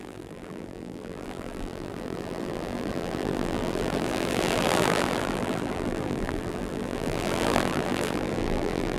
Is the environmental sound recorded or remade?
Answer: remade